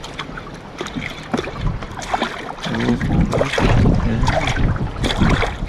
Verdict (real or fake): real